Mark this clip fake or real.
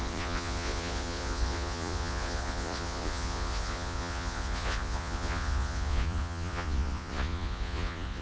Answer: fake